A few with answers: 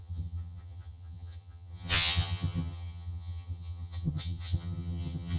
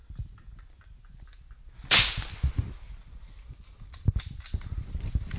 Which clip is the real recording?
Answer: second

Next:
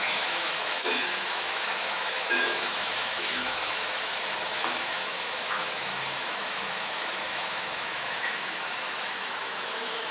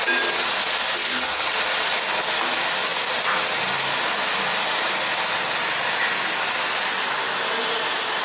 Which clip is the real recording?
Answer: second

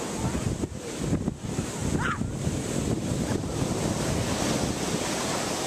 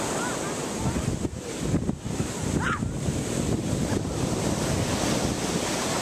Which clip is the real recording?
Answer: first